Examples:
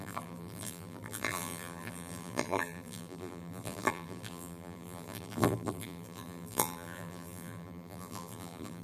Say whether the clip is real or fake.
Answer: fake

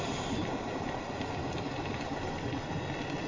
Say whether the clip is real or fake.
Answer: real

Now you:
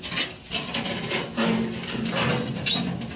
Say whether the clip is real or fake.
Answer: real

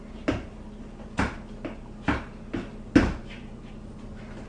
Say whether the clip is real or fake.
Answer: real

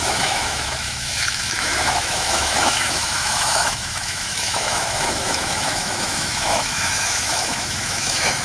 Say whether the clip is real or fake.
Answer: fake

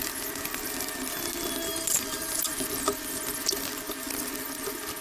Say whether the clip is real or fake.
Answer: real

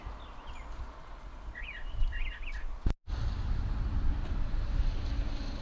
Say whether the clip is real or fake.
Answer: real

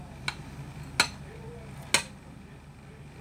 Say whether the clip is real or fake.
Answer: real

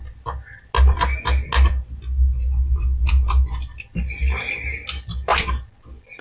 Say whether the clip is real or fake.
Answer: real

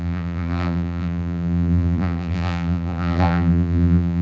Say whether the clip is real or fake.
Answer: fake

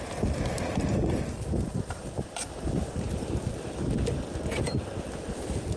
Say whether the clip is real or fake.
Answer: real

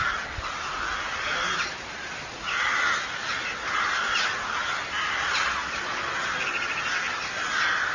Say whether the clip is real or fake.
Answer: real